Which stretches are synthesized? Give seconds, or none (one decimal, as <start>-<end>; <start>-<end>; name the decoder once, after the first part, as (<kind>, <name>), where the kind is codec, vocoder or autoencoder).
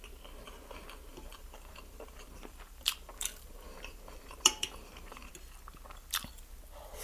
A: 1.1-5.3 (vocoder, BigVGAN v2)